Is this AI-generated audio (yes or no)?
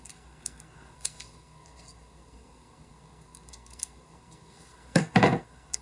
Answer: yes